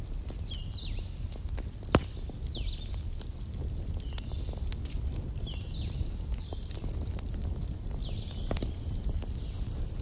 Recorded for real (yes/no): yes